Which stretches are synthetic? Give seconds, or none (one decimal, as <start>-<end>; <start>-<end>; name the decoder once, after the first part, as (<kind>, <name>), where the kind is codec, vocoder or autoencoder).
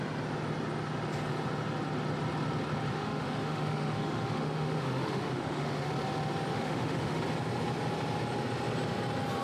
2.9-5.9 (autoencoder, DAC-VAE); 6.5-7.2